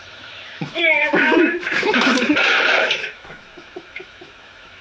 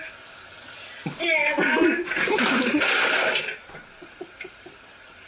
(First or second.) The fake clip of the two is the first